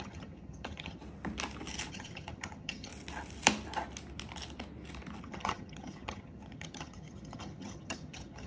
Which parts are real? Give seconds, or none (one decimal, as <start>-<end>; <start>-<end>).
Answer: 1.0-1.9; 2.9-5.2